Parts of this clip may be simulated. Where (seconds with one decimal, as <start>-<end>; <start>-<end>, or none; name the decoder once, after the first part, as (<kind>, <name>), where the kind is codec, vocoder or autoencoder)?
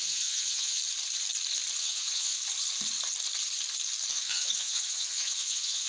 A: 0.0-0.8 (vocoder, Vocos); 1.8-2.4; 4.1-5.9